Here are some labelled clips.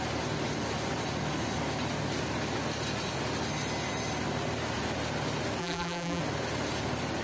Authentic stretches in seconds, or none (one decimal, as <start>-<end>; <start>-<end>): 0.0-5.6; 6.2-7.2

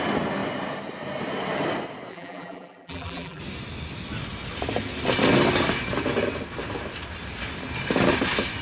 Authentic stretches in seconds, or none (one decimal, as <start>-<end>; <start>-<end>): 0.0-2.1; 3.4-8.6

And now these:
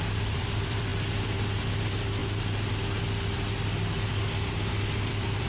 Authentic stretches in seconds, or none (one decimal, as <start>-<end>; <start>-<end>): 0.9-1.6; 2.2-4.1